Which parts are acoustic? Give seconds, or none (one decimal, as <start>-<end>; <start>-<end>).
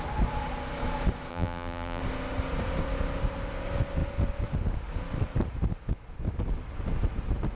0.0-1.3; 2.0-7.6